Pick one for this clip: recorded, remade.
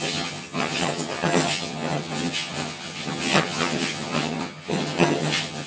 remade